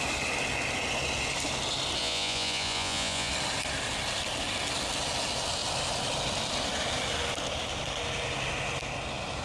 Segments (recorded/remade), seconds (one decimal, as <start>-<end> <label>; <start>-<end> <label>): 0.0-2.0 recorded; 2.0-3.3 remade; 3.3-9.4 recorded